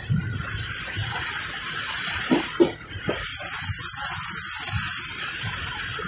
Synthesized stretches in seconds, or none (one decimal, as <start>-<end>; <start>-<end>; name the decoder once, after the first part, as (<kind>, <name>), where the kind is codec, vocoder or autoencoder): 0.0-1.0 (vocoder, BigVGAN v2); 2.0-3.3; 5.0-6.1